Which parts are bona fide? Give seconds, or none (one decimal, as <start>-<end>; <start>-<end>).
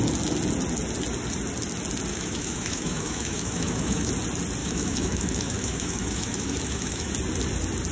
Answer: 0.0-2.1; 4.1-4.6; 7.1-7.9